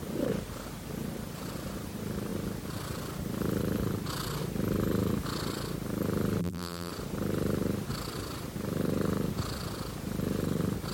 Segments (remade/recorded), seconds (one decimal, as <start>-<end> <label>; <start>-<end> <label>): 0.0-6.4 recorded; 6.4-6.9 remade; 6.9-10.9 recorded